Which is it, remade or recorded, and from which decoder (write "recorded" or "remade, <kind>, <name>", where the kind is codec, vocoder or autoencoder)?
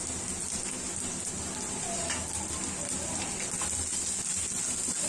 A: recorded